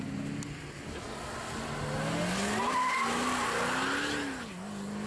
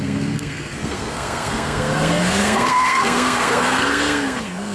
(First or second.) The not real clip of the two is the second